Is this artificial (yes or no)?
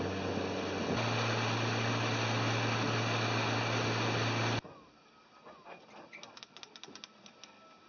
no